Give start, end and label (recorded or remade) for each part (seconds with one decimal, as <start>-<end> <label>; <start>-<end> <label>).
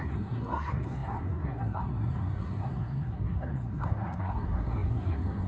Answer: 0.0-5.5 remade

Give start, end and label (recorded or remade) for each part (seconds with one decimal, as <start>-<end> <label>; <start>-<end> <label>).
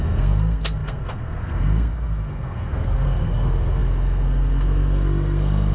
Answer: 0.0-5.7 remade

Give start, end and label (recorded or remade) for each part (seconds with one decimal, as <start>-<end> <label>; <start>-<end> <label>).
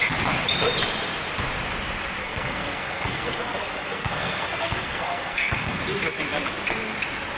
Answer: 0.0-2.2 recorded; 2.2-5.8 remade; 5.8-7.4 recorded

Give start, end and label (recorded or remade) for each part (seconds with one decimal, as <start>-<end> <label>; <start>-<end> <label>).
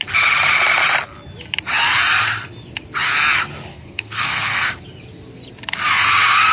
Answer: 0.0-3.7 recorded; 3.7-4.7 remade; 4.7-6.5 recorded